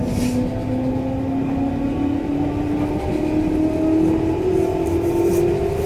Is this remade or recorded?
recorded